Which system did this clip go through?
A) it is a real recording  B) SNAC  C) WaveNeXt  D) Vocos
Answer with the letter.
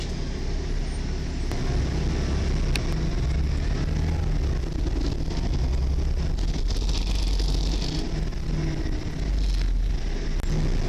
A